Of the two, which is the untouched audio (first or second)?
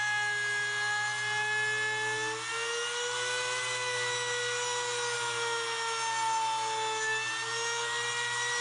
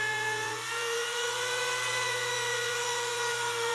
first